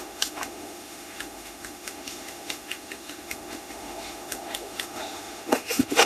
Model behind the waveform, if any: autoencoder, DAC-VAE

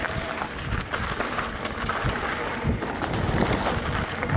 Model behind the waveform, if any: none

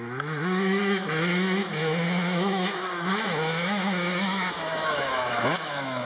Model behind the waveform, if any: autoencoder, DAC-VAE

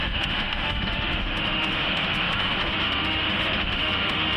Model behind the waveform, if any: autoencoder, DAC-VAE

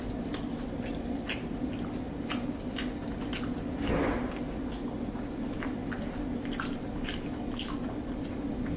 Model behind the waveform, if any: none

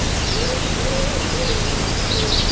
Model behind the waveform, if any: none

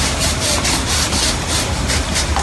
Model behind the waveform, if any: none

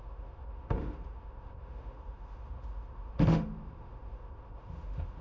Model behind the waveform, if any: autoencoder, DAC-VAE